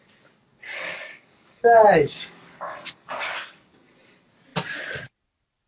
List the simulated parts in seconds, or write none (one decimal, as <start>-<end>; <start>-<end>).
0.5-3.9